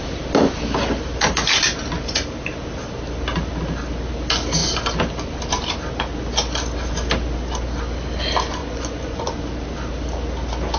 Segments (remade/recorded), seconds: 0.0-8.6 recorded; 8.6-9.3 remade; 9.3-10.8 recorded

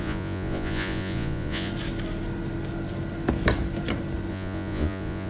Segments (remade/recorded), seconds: 0.0-1.7 remade; 1.7-4.3 recorded; 4.3-5.3 remade

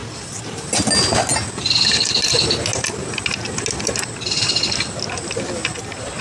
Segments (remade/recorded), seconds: 0.0-0.7 remade; 0.7-6.2 recorded

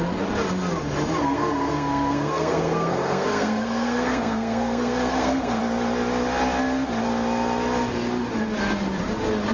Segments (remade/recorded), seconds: 0.0-1.2 recorded; 1.2-5.6 remade; 5.6-9.5 recorded

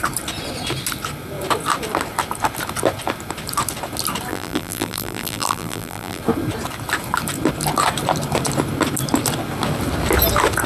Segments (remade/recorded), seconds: 0.0-4.3 recorded; 4.3-6.2 remade; 6.2-10.7 recorded